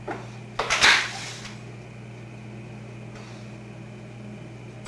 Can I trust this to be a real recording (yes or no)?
yes